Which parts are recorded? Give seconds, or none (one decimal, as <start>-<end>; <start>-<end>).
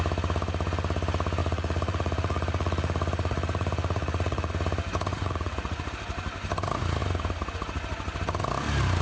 0.0-1.4; 4.5-5.1; 5.9-9.0